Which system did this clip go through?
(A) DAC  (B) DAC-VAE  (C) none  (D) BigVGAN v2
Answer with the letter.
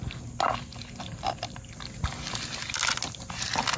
C